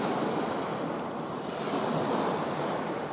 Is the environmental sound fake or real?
real